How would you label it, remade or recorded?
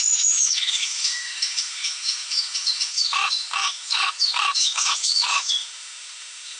remade